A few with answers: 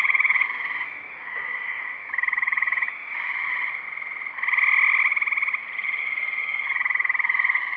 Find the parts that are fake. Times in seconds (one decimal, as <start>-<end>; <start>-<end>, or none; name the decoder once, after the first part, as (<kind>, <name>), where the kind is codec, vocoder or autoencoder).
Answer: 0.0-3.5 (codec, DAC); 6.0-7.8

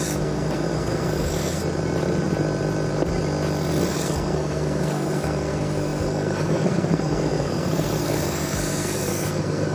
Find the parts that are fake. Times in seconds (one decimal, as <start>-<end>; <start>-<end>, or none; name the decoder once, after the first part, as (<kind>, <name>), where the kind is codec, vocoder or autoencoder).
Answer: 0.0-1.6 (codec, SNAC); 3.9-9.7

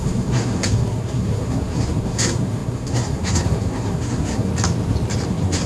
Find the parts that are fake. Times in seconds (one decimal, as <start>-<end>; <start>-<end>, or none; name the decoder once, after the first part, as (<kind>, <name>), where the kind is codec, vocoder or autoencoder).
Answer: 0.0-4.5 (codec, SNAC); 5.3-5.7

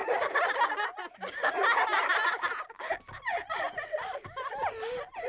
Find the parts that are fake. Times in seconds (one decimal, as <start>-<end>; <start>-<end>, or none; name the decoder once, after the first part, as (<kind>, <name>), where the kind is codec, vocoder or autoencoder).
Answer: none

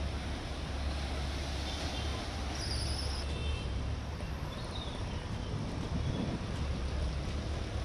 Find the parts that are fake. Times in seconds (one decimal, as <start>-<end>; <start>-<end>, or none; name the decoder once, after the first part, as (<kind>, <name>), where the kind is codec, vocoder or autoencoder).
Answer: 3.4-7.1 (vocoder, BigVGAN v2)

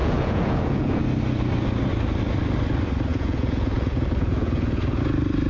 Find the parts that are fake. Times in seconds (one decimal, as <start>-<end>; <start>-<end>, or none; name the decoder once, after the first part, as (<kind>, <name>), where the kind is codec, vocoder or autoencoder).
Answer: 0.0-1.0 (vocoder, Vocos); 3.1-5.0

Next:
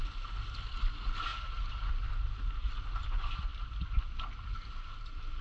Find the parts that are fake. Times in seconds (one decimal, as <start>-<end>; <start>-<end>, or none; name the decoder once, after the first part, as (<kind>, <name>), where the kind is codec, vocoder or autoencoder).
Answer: none